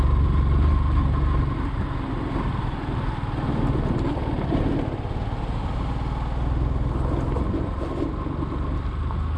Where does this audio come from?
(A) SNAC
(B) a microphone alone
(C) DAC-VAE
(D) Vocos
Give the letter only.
B